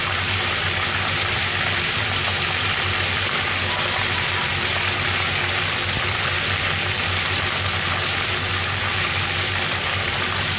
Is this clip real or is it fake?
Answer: fake